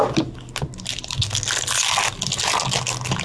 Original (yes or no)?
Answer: yes